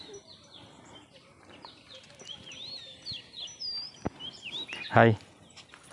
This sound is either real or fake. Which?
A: real